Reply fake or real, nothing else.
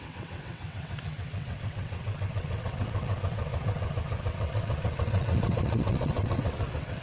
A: fake